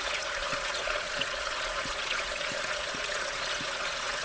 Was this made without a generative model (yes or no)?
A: no